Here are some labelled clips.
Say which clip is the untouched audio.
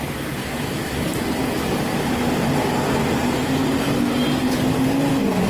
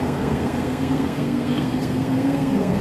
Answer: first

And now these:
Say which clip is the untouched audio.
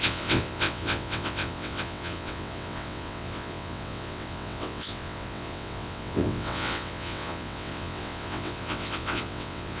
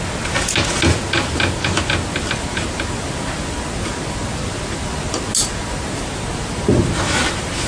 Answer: second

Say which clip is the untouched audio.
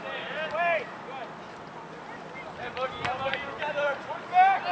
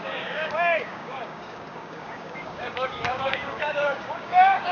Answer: first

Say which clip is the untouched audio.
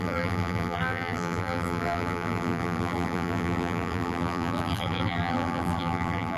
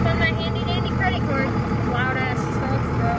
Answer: second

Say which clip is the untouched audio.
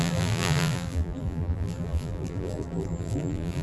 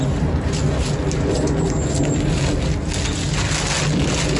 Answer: second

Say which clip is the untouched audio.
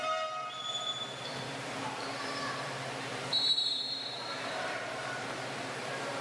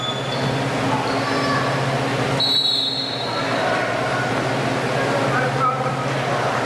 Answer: second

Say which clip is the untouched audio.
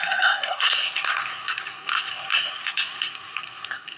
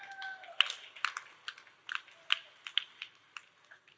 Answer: second